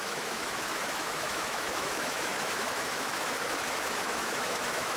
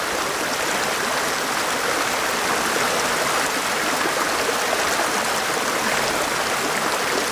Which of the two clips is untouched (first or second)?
second